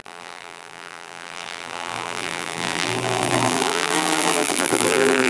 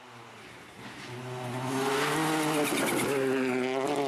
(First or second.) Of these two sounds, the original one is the second